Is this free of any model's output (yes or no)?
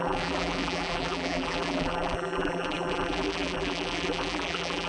no